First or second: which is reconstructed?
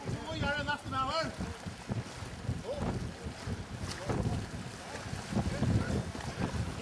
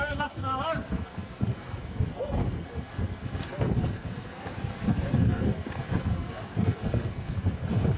second